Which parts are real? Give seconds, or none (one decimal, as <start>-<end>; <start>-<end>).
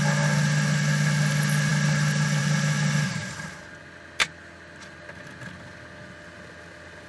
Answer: 0.0-7.1